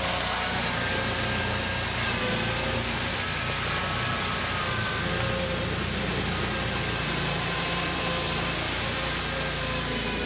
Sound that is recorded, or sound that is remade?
recorded